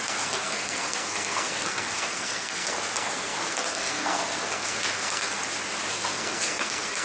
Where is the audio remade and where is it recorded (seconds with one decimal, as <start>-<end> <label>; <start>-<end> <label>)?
0.0-5.4 remade; 5.4-5.9 recorded; 5.9-7.0 remade